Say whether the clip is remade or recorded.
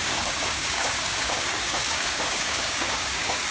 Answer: remade